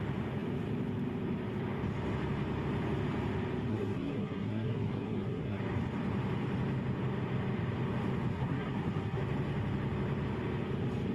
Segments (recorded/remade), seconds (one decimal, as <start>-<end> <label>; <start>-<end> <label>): 0.0-3.7 recorded; 3.7-5.6 remade; 5.6-8.3 recorded; 8.3-9.2 remade; 9.2-11.1 recorded